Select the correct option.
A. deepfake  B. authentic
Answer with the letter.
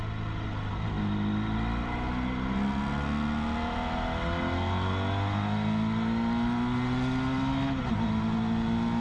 B